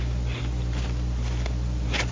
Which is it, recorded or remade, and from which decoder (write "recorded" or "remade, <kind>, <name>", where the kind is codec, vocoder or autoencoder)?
recorded